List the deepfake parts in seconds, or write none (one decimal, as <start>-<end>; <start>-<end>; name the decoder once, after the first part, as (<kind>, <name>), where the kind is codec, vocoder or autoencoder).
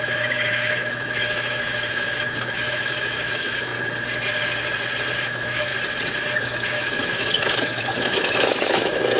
0.0-3.7 (autoencoder, DAC-VAE); 5.2-5.7; 6.4-9.2